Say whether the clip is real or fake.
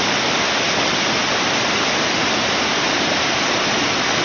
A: real